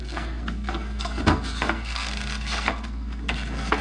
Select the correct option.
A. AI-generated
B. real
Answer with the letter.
A